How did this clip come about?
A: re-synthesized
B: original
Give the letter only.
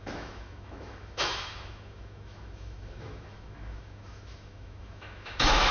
A